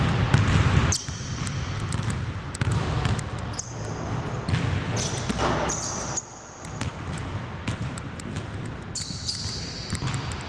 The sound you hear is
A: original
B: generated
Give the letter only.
A